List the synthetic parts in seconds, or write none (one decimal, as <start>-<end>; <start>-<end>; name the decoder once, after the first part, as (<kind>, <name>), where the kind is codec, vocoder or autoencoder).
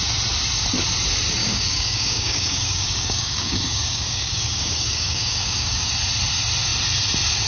1.4-5.9 (codec, DAC)